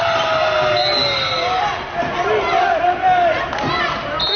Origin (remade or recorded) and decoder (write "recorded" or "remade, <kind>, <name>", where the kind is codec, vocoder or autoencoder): recorded